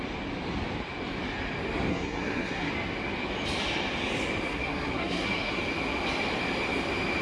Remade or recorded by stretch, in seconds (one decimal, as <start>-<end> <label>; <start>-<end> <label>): 0.0-1.9 recorded; 1.9-2.7 remade; 2.7-4.5 recorded; 4.5-5.6 remade; 5.6-7.2 recorded